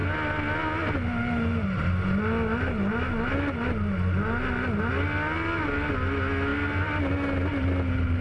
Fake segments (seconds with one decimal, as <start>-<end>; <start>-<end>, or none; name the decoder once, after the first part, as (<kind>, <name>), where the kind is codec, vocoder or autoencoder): none